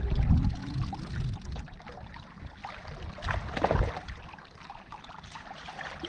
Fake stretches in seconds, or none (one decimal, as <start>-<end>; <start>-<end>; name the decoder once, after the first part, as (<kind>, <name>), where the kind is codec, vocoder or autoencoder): 0.0-2.6 (vocoder, BigVGAN v2); 3.5-6.1